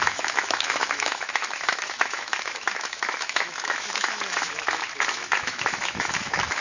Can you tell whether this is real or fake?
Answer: fake